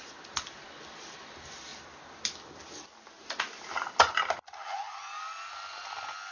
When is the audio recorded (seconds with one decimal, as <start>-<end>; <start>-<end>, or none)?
0.0-6.3